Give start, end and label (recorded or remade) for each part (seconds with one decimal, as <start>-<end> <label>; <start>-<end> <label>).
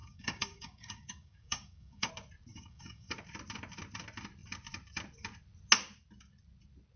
0.0-2.1 remade; 2.1-2.5 recorded; 2.5-3.1 remade; 3.1-7.0 recorded